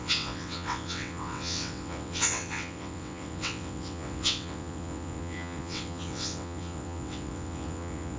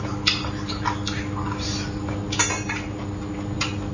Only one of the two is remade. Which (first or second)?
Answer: first